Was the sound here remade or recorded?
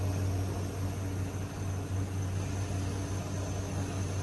recorded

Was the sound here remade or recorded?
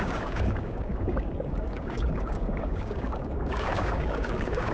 remade